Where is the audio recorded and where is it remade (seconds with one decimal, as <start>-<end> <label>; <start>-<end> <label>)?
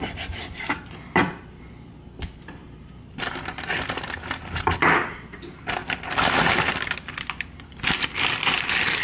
0.0-9.0 recorded